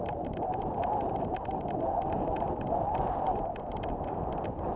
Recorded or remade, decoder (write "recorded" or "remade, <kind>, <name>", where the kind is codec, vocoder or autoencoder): recorded